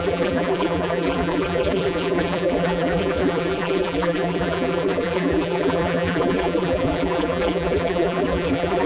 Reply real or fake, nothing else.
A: fake